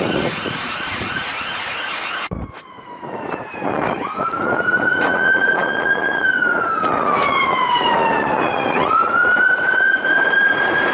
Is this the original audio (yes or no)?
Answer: no